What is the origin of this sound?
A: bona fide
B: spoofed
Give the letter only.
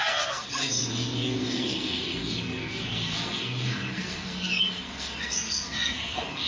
B